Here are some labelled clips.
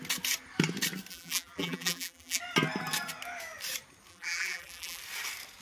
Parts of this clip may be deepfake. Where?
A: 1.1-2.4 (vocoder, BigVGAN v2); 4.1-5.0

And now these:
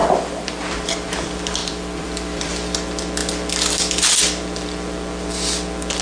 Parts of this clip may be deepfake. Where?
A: 0.0-0.6 (vocoder, BigVGAN v2); 1.6-2.5

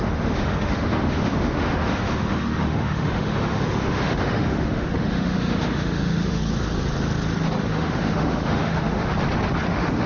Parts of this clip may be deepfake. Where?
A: 0.0-6.4 (autoencoder, DAC-VAE); 7.6-9.1; 9.7-10.1

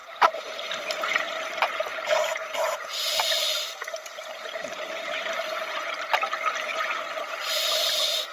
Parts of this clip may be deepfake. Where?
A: 0.0-0.8 (vocoder, BigVGAN v2); 1.9-5.9; 6.7-7.4

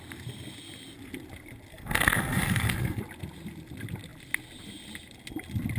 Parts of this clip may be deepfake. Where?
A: 1.7-3.0 (codec, SNAC)

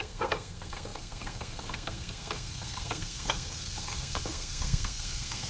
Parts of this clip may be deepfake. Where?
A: 0.0-5.5 (codec, SNAC)